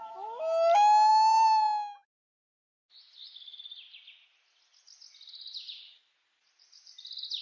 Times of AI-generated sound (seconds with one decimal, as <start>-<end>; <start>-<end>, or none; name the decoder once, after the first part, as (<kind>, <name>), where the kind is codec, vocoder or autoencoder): none